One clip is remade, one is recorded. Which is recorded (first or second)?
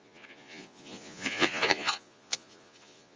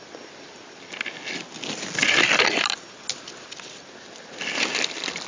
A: second